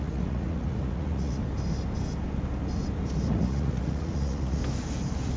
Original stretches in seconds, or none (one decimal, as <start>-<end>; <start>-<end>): 1.4-3.3; 4.6-5.4